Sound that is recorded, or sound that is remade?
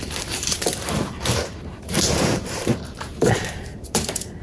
remade